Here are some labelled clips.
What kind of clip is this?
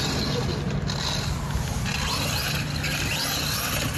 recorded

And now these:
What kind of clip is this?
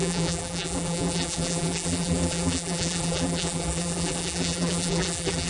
remade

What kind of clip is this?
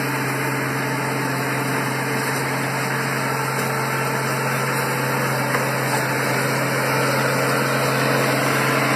recorded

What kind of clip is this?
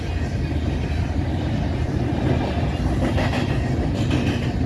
recorded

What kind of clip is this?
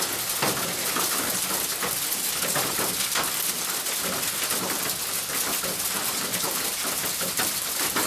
recorded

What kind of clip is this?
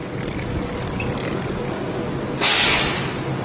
recorded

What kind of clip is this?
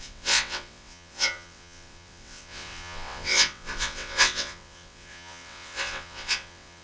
remade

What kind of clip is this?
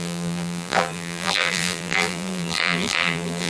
remade